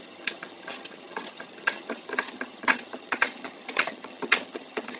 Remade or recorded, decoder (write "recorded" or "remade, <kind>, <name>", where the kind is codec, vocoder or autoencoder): remade, vocoder, HiFi-GAN